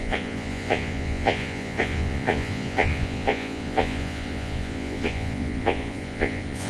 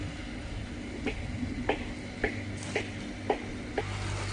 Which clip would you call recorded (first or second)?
second